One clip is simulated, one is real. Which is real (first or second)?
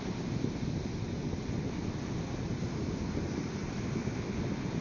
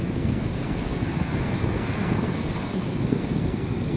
first